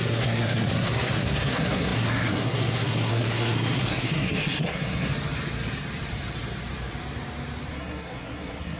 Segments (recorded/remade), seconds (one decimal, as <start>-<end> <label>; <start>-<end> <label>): 0.0-5.1 remade; 5.1-7.7 recorded; 7.7-8.8 remade